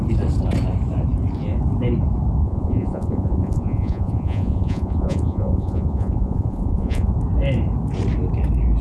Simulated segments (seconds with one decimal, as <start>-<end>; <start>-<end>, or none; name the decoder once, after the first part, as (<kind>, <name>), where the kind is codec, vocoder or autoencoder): 2.4-7.1 (vocoder, Vocos)